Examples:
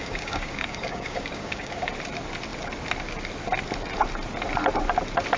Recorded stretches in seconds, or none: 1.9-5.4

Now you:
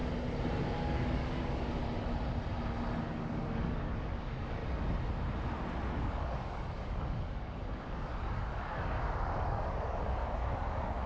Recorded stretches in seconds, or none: 0.0-0.6; 1.8-3.0; 4.6-6.0

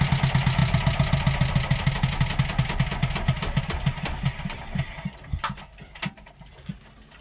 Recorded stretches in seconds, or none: 0.0-7.2